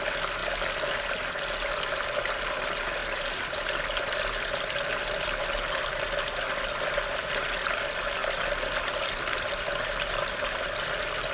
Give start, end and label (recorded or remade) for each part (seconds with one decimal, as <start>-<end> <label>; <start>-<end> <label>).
0.0-0.4 recorded; 0.4-1.3 remade; 1.3-11.3 recorded